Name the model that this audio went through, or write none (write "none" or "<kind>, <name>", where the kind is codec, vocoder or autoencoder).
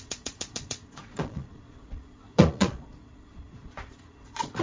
vocoder, Vocos